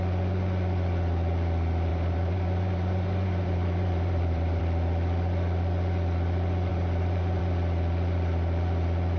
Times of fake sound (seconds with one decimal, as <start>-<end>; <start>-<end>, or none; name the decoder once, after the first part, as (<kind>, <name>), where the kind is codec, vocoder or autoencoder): 1.9-4.6 (vocoder, BigVGAN v2); 6.7-7.4